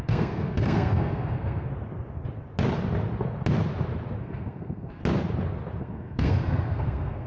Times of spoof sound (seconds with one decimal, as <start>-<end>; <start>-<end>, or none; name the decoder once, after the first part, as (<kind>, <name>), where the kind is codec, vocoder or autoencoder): 0.0-1.7 (codec, SNAC); 4.2-5.0; 5.8-7.3